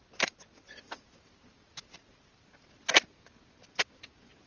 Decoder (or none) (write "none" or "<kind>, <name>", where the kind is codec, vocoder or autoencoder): none